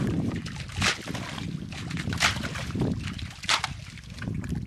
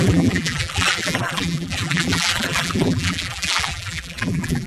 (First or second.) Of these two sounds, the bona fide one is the first